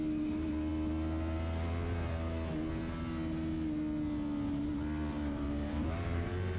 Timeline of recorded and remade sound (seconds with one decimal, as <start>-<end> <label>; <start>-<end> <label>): 0.0-5.1 recorded; 5.1-6.6 remade